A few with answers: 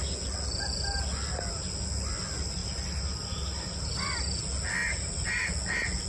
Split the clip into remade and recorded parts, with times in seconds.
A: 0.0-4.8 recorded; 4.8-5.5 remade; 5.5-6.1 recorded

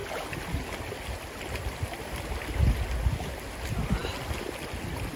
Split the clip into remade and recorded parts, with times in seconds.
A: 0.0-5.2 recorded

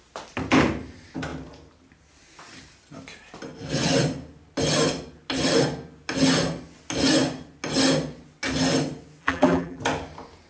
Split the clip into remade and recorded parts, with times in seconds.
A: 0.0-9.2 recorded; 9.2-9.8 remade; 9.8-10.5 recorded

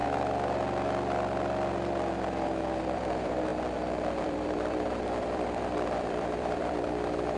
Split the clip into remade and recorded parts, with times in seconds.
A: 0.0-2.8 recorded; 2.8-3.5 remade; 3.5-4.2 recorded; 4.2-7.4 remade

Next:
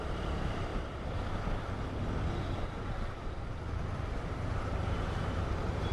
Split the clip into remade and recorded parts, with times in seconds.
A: 0.0-0.7 remade; 0.7-4.1 recorded; 4.1-5.9 remade